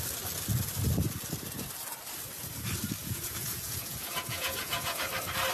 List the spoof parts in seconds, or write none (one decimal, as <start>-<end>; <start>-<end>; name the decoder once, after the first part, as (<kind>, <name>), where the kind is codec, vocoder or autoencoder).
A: 3.0-5.1 (vocoder, Vocos)